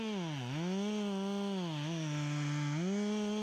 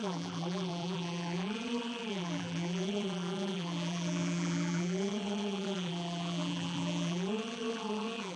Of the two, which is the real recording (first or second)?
first